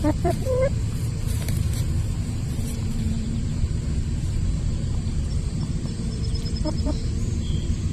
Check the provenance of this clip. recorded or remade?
remade